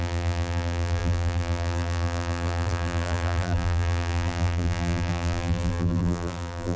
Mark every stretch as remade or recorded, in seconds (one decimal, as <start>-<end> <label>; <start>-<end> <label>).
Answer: 0.0-6.8 remade